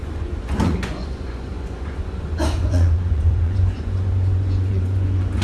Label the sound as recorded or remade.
remade